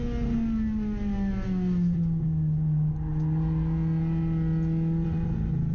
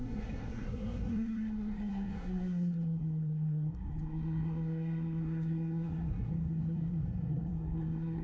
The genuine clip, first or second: first